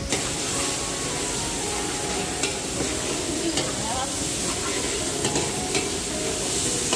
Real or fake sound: real